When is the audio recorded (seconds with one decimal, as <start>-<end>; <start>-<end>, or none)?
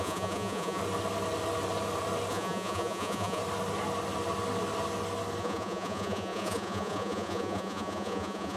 0.8-2.3; 3.4-5.4